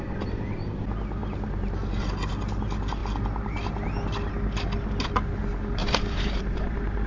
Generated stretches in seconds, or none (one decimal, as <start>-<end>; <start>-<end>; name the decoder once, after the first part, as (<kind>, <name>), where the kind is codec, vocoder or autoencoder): 5.8-7.1 (vocoder, BigVGAN v2)